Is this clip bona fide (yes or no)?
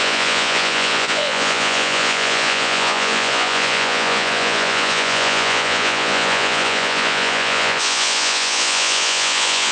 no